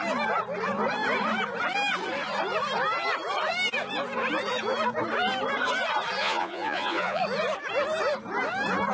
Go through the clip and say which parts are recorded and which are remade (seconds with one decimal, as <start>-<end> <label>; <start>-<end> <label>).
0.0-6.2 recorded; 6.2-7.2 remade; 7.2-8.9 recorded